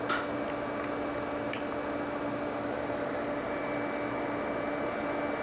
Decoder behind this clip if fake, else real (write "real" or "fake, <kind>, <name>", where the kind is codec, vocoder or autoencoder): real